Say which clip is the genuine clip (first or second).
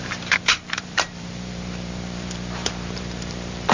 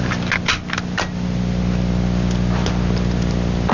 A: second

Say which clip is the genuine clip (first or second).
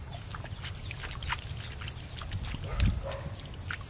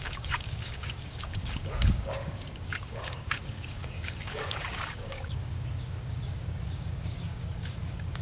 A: first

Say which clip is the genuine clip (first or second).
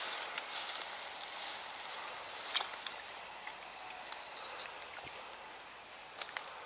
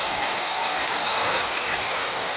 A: first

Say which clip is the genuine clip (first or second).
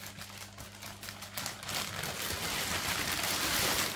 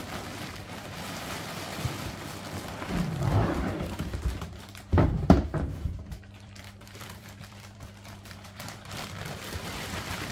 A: first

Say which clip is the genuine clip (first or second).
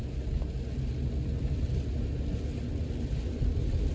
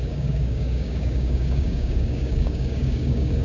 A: first